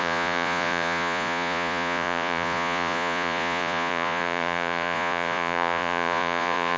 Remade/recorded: remade